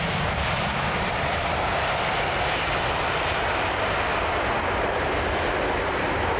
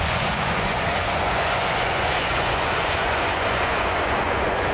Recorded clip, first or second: first